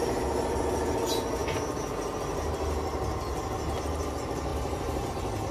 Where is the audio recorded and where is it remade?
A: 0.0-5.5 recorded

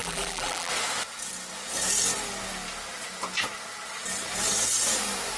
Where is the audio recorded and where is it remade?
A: 0.0-0.7 remade; 0.7-5.4 recorded

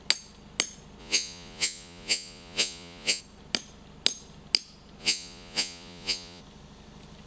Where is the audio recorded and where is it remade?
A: 0.0-1.0 recorded; 1.0-3.2 remade; 3.2-5.0 recorded; 5.0-6.4 remade; 6.4-7.3 recorded

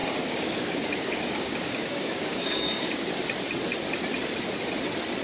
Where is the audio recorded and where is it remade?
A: 0.0-3.1 remade; 3.1-5.2 recorded

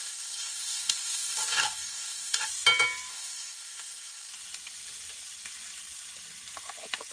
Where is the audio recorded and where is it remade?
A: 0.0-2.5 remade; 2.5-3.1 recorded; 3.1-4.3 remade; 4.3-7.1 recorded

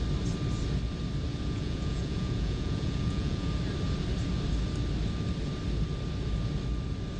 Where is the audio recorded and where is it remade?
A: 0.0-1.3 recorded; 1.3-3.5 remade; 3.5-7.2 recorded

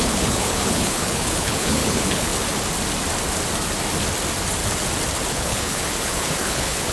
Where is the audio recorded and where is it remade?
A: 0.0-2.3 remade; 2.3-5.3 recorded; 5.3-6.9 remade

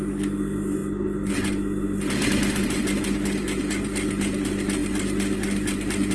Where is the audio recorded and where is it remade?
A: 0.0-6.1 recorded